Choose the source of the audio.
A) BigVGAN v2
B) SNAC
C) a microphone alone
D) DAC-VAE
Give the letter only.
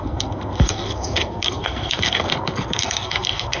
B